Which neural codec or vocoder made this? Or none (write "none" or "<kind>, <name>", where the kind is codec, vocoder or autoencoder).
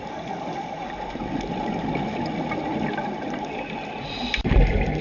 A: none